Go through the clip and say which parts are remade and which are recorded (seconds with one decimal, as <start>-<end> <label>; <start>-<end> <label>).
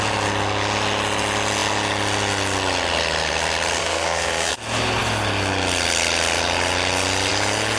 0.0-3.8 recorded; 3.8-4.5 remade; 4.5-7.8 recorded